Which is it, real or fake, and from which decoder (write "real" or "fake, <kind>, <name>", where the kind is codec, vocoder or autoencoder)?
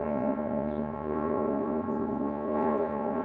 fake, vocoder, Vocos